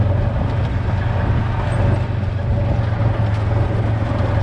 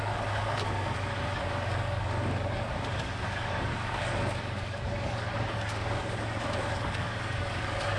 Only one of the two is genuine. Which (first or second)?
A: first